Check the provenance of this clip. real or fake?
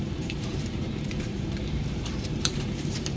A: fake